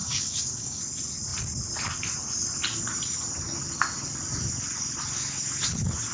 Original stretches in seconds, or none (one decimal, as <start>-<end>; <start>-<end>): 0.8-6.1